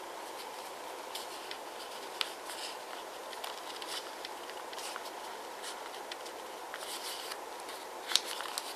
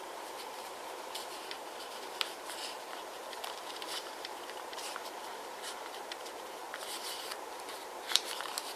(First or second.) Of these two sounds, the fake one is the second